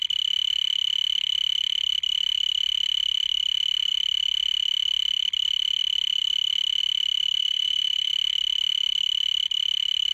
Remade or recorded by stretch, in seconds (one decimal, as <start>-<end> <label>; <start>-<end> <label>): 0.0-7.4 recorded; 7.4-8.1 remade; 8.1-10.1 recorded